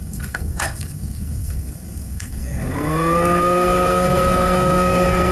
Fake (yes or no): yes